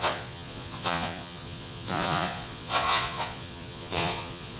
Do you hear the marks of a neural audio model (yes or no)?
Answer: yes